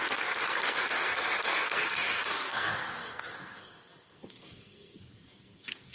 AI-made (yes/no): yes